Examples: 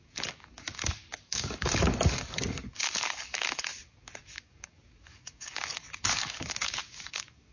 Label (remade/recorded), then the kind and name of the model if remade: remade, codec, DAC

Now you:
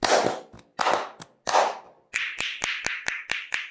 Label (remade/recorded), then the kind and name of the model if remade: recorded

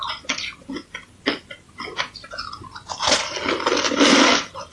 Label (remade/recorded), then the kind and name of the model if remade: recorded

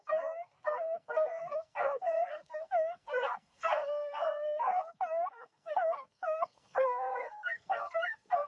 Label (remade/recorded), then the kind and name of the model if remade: remade, codec, SNAC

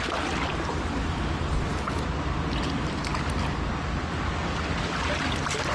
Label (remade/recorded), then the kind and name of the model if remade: recorded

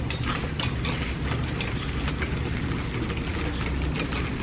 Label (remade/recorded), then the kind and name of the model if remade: recorded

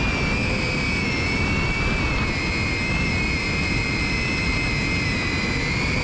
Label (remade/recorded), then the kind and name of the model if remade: recorded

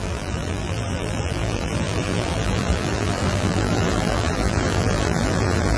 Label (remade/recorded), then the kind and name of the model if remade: remade, vocoder, BigVGAN v2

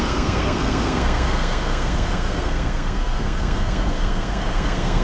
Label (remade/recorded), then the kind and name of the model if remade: remade, codec, SNAC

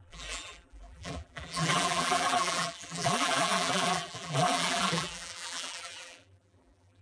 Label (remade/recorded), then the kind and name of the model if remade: remade, vocoder, BigVGAN v2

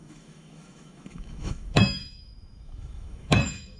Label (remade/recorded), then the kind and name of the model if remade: remade, autoencoder, DAC-VAE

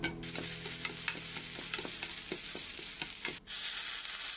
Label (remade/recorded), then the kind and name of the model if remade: recorded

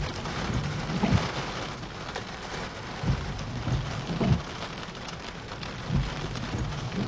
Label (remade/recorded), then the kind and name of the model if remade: recorded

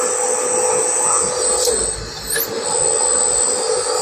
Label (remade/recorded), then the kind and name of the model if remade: recorded